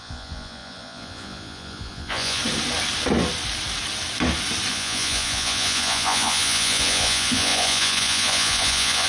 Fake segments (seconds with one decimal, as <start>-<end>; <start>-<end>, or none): 0.0-2.4; 4.7-9.1